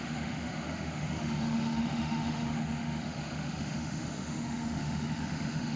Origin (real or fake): fake